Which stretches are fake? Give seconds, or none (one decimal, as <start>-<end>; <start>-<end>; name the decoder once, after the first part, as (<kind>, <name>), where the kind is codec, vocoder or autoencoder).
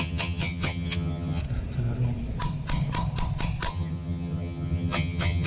0.0-1.4 (vocoder, HiFi-GAN); 3.7-5.5